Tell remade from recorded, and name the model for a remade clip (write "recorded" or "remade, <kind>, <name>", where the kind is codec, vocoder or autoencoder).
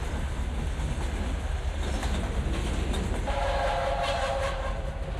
recorded